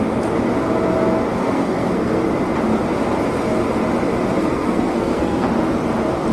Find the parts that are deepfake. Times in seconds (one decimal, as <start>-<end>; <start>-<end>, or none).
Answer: 1.4-2.2; 4.4-5.5